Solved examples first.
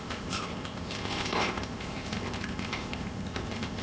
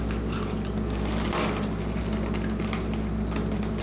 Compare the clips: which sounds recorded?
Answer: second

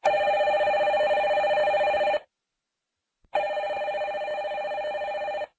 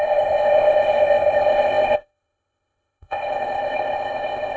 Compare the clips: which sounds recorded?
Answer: first